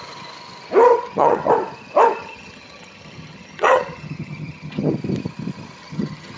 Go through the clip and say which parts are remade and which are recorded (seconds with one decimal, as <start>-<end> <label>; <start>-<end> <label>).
0.0-0.9 recorded; 0.9-1.5 remade; 1.5-2.2 recorded; 2.2-4.9 remade; 4.9-5.8 recorded; 5.8-6.4 remade